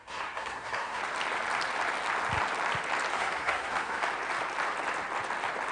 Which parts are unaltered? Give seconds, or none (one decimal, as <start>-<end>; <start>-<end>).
1.0-3.1; 4.0-5.7

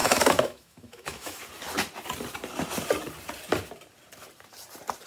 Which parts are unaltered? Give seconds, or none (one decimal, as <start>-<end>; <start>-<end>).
1.4-5.1

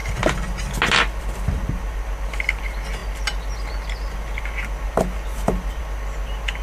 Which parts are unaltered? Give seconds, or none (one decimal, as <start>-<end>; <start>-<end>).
0.0-6.6